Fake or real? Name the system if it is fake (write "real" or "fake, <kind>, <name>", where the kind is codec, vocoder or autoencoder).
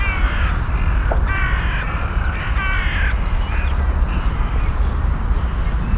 real